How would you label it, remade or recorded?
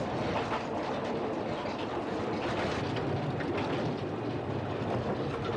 recorded